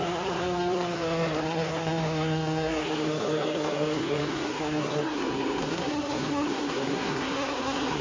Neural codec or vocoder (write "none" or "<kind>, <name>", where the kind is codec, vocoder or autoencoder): codec, SNAC